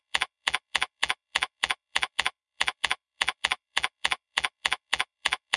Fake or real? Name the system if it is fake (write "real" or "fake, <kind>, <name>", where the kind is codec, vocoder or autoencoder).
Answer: fake, vocoder, BigVGAN v2